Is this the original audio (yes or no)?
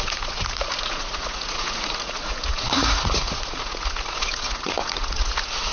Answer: no